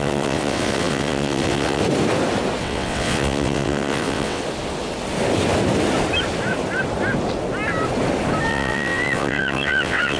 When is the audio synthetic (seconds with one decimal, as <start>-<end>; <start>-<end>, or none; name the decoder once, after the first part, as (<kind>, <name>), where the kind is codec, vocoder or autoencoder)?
0.0-1.8 (vocoder, WaveNeXt); 2.6-4.4; 8.5-10.2